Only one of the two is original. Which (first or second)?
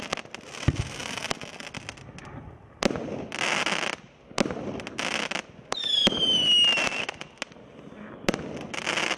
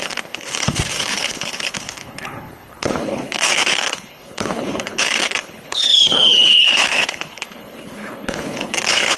first